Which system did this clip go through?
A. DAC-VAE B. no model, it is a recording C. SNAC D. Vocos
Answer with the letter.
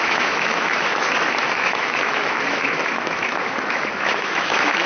A